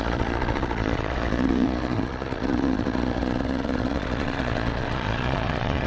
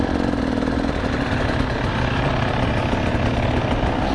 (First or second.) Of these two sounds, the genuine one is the second